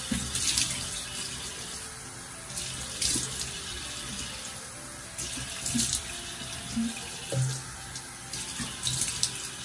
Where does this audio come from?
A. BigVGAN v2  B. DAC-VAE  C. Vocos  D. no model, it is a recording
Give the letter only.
D